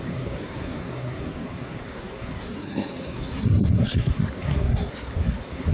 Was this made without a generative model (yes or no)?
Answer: no